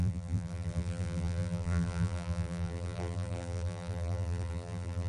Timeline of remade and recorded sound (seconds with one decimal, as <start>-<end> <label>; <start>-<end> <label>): 0.0-5.1 remade